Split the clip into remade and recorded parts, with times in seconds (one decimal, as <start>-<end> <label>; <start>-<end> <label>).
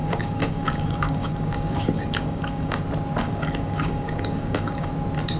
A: 0.0-2.8 remade; 2.8-3.2 recorded; 3.2-4.9 remade; 4.9-5.4 recorded